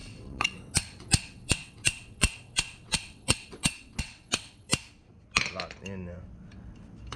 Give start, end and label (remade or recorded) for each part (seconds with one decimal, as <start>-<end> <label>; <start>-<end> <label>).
0.0-4.7 remade; 4.7-7.2 recorded